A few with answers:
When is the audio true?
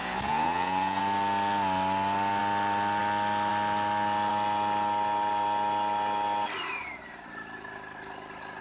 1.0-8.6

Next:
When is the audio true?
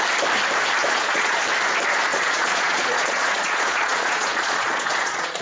0.0-0.8; 1.4-2.1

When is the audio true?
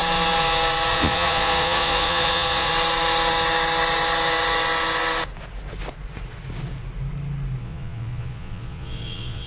0.0-0.9; 2.7-7.6